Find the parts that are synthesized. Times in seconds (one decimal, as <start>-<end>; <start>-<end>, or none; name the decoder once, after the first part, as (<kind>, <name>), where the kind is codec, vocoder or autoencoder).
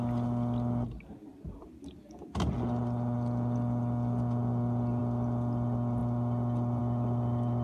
none